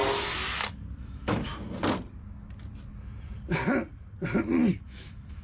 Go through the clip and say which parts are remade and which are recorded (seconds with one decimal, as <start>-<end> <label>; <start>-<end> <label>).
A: 0.0-1.0 recorded; 1.0-1.5 remade; 1.5-4.7 recorded; 4.7-5.4 remade

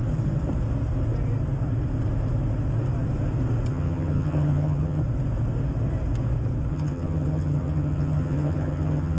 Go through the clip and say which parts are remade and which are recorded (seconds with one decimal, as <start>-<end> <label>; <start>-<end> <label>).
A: 0.0-3.7 recorded; 3.7-5.0 remade; 5.0-6.7 recorded; 6.7-9.2 remade

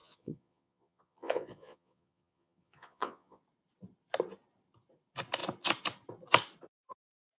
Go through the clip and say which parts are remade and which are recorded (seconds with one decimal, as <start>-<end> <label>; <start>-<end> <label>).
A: 0.0-3.4 remade; 3.4-7.4 recorded